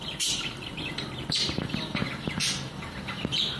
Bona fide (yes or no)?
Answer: no